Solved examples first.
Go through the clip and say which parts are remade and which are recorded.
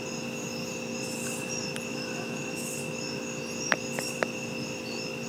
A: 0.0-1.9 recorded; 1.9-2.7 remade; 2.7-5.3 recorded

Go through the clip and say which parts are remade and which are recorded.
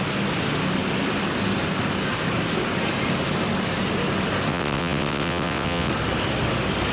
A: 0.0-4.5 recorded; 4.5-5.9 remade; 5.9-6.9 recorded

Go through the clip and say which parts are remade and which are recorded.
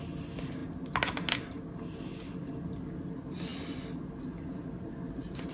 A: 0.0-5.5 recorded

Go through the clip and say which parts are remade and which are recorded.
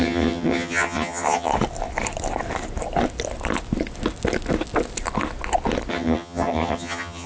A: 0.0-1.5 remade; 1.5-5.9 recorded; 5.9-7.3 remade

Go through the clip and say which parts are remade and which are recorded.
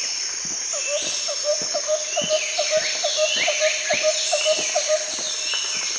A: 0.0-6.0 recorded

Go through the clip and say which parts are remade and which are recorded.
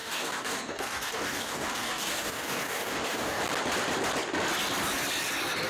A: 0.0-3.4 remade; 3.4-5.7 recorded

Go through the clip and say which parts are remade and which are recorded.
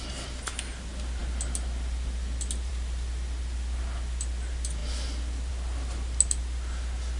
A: 0.0-7.2 recorded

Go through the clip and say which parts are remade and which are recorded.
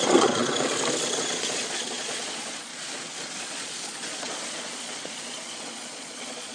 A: 0.0-0.4 remade; 0.4-1.2 recorded; 1.2-2.7 remade; 2.7-3.4 recorded; 3.4-6.5 remade